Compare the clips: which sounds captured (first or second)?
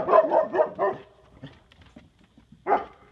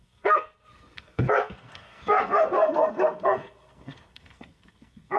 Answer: first